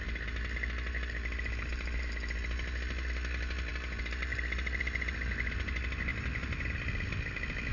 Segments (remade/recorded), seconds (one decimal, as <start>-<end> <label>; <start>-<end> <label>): 0.0-7.7 recorded